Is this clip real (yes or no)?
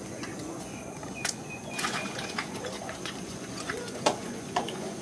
no